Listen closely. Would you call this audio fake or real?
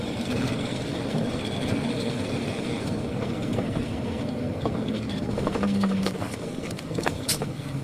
fake